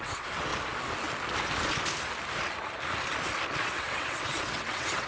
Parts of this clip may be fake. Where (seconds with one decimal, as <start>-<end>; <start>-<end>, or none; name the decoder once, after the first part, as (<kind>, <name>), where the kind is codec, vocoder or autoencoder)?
0.0-0.5 (vocoder, WaveNeXt); 3.6-5.1